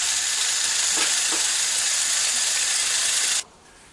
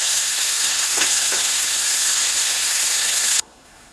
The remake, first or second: second